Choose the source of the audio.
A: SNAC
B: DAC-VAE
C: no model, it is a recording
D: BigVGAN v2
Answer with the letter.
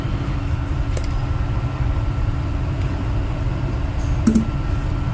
C